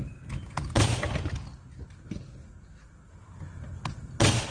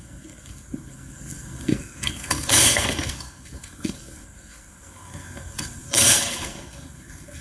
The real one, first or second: first